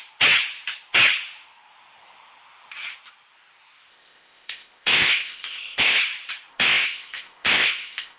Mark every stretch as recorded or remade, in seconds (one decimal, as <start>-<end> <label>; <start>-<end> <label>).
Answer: 0.0-3.9 recorded; 3.9-6.0 remade; 6.0-6.5 recorded; 6.5-8.2 remade